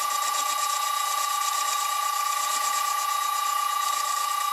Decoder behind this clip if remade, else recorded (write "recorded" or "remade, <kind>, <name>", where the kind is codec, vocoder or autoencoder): recorded